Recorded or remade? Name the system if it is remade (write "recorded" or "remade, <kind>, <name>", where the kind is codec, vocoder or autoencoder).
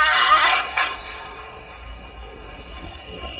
remade, codec, SNAC